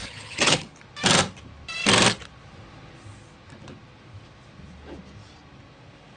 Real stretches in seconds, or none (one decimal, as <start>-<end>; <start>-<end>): 0.8-6.2